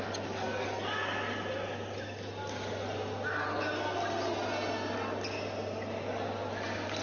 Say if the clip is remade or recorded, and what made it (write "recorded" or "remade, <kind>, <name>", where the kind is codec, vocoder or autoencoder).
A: recorded